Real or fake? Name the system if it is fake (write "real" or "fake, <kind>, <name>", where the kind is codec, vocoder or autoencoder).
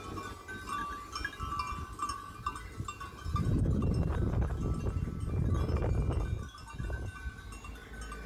real